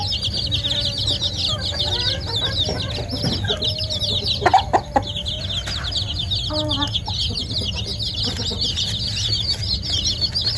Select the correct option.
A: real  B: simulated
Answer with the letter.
A